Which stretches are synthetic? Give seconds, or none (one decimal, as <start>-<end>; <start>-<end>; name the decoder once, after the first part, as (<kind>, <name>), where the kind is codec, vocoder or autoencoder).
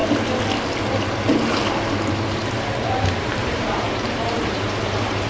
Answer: 1.7-5.3 (vocoder, BigVGAN v2)